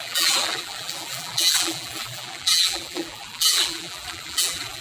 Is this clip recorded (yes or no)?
no